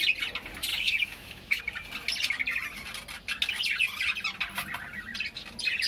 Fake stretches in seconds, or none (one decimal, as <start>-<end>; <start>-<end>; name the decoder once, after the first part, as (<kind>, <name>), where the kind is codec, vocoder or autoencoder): 0.7-1.6 (autoencoder, DAC-VAE)